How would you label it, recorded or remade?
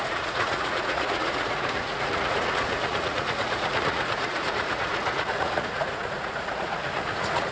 remade